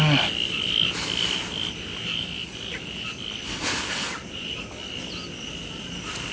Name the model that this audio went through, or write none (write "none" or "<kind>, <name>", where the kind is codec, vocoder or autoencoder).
none